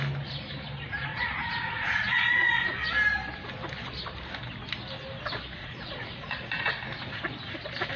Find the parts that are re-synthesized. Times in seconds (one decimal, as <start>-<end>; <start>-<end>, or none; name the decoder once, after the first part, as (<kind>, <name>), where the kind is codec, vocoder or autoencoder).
1.1-2.7 (vocoder, Vocos); 5.6-6.7